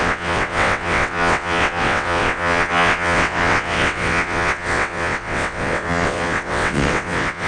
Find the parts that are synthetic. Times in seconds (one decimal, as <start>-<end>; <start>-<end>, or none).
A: 0.0-7.5